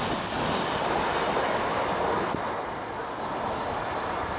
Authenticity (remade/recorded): recorded